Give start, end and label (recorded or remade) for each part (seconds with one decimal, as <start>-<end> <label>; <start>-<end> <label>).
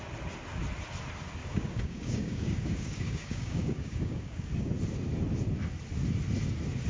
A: 0.0-1.4 recorded; 1.4-4.7 remade; 4.7-6.9 recorded